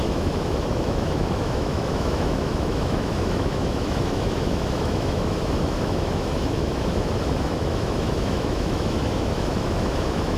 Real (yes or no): no